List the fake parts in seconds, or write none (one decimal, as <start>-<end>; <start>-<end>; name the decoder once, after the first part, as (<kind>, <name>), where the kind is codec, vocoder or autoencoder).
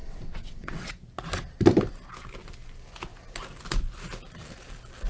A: 0.0-0.9 (vocoder, WaveNeXt)